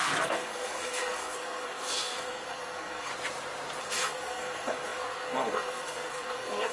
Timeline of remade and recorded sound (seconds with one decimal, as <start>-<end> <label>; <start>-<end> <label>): 0.0-3.1 remade; 3.1-3.8 recorded; 3.8-6.7 remade